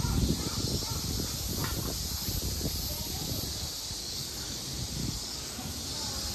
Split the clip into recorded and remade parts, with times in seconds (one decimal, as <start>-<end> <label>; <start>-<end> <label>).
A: 0.0-4.0 recorded; 4.0-4.6 remade; 4.6-5.0 recorded; 5.0-5.7 remade; 5.7-6.3 recorded